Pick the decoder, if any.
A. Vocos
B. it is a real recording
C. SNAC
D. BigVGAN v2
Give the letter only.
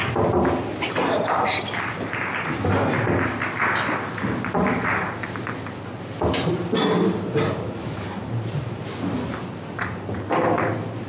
B